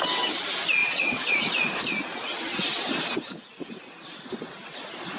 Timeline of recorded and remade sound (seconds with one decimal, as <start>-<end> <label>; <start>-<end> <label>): 0.0-0.8 recorded; 0.8-1.5 remade; 1.5-5.2 recorded